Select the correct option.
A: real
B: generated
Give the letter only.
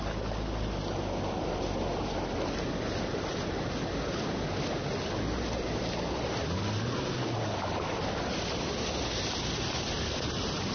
A